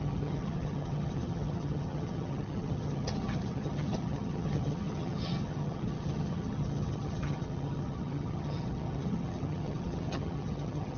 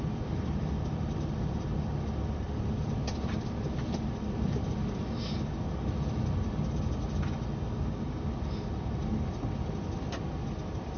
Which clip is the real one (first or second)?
second